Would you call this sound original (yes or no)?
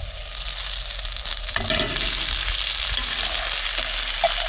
yes